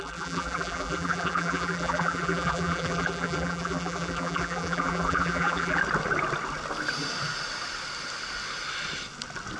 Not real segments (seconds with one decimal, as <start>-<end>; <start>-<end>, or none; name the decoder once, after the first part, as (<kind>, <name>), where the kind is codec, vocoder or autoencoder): 0.0-5.8 (vocoder, BigVGAN v2)